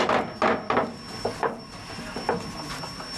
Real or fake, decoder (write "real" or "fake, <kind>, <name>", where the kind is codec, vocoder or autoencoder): real